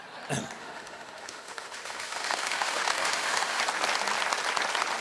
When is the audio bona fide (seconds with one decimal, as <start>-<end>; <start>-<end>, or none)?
0.0-0.6; 3.6-5.0